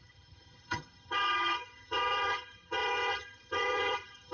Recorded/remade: remade